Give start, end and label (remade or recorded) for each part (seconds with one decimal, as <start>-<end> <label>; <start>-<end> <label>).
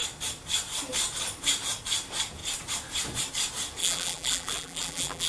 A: 0.0-3.8 recorded; 3.8-5.3 remade